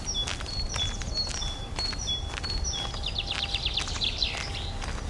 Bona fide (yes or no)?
yes